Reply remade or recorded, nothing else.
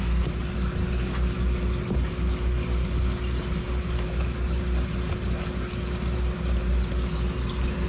recorded